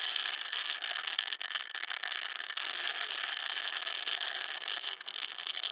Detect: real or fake fake